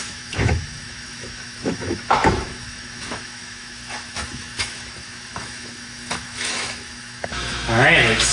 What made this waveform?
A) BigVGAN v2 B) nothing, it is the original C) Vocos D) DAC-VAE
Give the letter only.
D